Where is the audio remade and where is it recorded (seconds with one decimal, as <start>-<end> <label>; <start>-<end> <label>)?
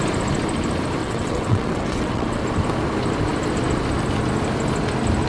0.0-1.0 recorded; 1.0-2.4 remade; 2.4-5.3 recorded